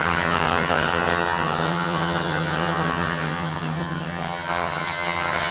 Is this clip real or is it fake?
fake